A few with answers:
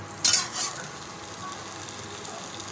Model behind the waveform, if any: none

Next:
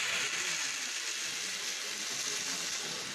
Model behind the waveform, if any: none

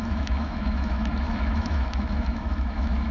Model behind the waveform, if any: autoencoder, DAC-VAE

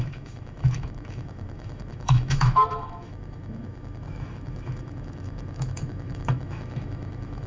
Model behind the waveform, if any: autoencoder, DAC-VAE